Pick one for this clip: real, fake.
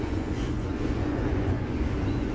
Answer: fake